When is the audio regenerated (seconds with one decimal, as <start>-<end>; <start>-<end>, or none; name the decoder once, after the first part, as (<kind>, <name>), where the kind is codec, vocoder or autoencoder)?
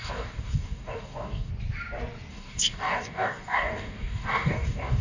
0.0-1.5 (codec, DAC); 2.3-5.0